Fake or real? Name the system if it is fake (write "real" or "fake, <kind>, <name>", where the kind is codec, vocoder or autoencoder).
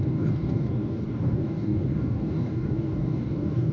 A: fake, codec, DAC